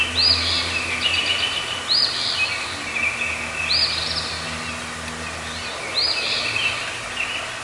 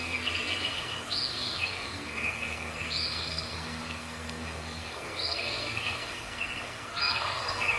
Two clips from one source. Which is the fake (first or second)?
second